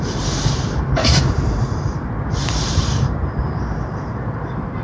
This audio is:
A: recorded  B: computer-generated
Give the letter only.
B